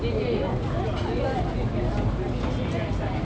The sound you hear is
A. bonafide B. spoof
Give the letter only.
A